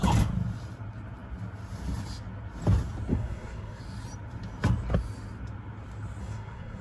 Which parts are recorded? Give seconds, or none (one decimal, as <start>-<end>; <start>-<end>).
0.0-3.1; 3.8-6.2